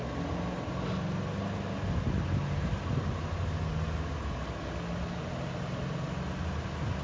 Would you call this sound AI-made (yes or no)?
no